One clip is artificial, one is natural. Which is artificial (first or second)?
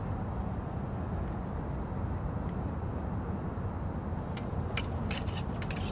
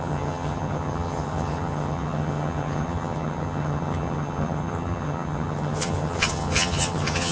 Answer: second